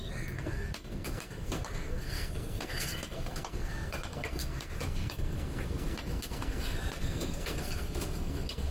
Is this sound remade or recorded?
remade